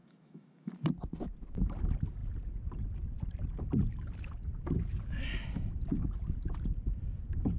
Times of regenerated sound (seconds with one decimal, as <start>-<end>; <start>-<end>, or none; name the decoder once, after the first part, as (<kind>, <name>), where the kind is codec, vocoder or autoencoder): 0.0-0.7 (autoencoder, DAC-VAE)